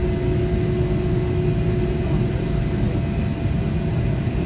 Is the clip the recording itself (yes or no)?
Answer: yes